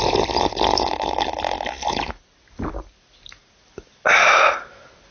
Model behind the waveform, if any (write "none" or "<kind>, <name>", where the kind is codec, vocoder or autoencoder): none